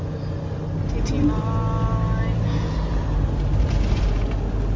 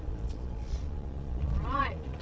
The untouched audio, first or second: first